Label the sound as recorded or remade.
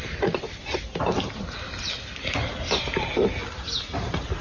recorded